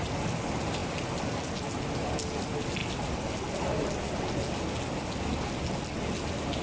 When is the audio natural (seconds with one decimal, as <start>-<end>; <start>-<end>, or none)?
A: 0.0-6.6

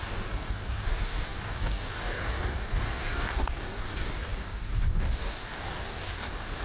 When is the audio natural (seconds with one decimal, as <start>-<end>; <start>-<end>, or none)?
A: none

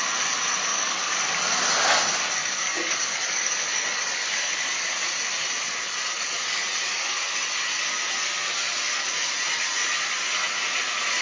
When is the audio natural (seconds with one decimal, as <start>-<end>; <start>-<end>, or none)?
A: 0.0-0.7; 1.2-2.4; 4.6-6.4; 7.4-11.2

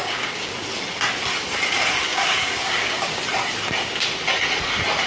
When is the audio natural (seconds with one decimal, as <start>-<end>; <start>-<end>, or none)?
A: 0.5-2.1; 3.2-5.1

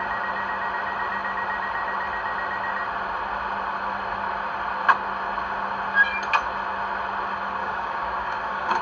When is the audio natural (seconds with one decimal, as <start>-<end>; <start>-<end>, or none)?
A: 0.0-7.6

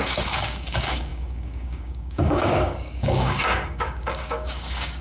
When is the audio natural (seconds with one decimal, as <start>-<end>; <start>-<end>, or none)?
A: none